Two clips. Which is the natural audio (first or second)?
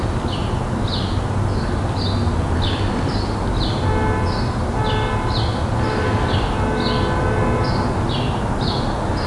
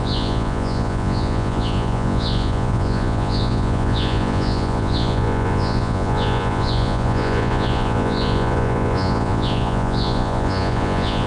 first